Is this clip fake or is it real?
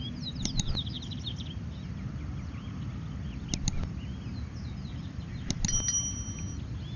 real